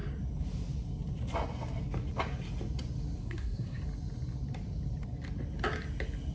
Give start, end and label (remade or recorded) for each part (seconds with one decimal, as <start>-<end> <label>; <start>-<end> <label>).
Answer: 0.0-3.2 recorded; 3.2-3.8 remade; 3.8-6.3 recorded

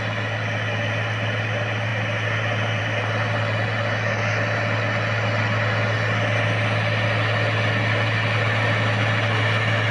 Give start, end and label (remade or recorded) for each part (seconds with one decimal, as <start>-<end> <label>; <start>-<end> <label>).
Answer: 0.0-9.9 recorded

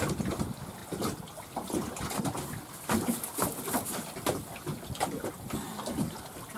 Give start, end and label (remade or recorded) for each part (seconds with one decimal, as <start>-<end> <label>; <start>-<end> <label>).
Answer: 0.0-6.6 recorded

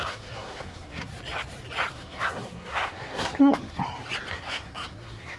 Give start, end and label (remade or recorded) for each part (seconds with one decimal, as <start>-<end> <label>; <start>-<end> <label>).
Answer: 0.0-1.1 remade; 1.1-1.9 recorded; 1.9-3.8 remade; 3.8-4.3 recorded; 4.3-5.4 remade

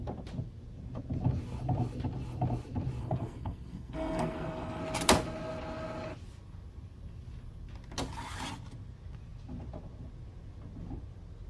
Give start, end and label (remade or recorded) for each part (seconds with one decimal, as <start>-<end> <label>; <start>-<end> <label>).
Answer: 0.0-3.0 recorded; 3.0-4.8 remade; 4.8-11.5 recorded

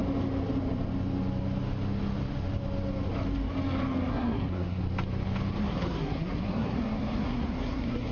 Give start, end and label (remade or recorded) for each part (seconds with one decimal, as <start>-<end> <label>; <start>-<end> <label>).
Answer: 0.0-4.1 recorded; 4.1-4.8 remade; 4.8-5.6 recorded; 5.6-8.1 remade

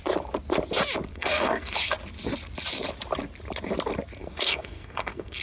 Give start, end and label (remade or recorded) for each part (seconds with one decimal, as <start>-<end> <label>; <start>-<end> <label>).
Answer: 0.0-1.1 recorded; 1.1-1.9 remade; 1.9-4.2 recorded; 4.2-5.4 remade

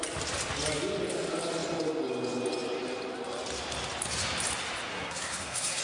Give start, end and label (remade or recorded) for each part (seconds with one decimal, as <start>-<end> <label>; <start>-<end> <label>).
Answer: 0.0-4.9 recorded; 4.9-5.8 remade